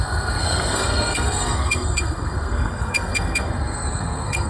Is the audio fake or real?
fake